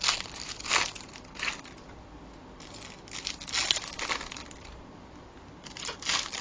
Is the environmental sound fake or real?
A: real